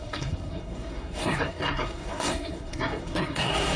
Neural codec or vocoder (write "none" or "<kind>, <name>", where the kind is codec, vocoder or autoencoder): codec, SNAC